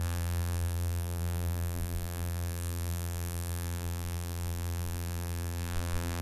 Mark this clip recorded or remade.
remade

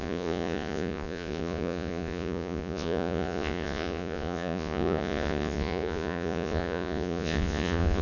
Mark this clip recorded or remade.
remade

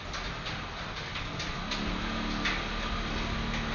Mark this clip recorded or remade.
recorded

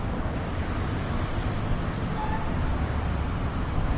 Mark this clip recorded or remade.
remade